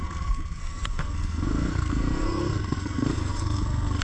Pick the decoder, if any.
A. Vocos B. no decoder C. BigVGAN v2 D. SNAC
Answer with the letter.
D